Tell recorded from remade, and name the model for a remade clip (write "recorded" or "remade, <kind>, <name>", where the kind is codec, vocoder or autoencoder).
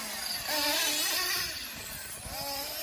recorded